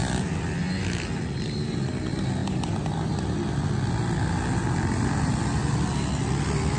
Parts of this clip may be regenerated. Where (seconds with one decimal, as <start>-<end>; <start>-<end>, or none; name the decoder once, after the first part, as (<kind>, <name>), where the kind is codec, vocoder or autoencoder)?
none